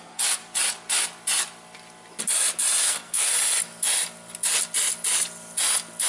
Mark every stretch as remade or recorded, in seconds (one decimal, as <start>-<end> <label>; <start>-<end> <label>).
0.0-0.4 remade; 0.4-2.8 recorded; 2.8-3.3 remade; 3.3-6.1 recorded

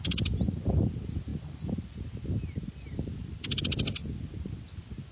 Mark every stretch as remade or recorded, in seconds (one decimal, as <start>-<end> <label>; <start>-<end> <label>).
0.0-5.1 recorded

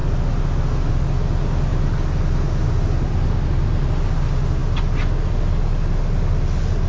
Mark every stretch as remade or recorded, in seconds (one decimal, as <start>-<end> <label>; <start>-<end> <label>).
0.0-6.9 recorded

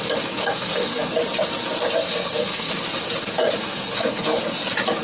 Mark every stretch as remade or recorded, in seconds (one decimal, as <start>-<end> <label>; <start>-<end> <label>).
0.0-0.4 recorded; 0.4-1.1 remade; 1.1-2.1 recorded; 2.1-2.7 remade; 2.7-3.6 recorded; 3.6-4.4 remade; 4.4-5.0 recorded

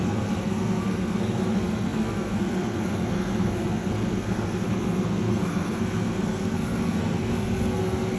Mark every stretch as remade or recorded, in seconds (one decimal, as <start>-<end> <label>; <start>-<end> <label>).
0.0-8.2 remade

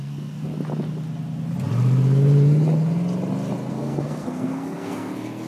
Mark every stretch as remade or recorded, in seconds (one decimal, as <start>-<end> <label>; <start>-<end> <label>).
0.0-0.5 remade; 0.5-3.7 recorded; 3.7-5.5 remade